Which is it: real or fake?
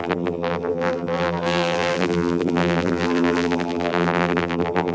fake